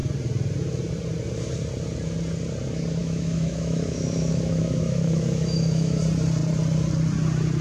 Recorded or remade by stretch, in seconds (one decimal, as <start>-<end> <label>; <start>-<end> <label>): 0.0-3.0 recorded; 3.0-6.0 remade; 6.0-7.6 recorded